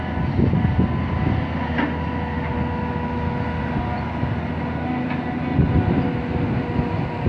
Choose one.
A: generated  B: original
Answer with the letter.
B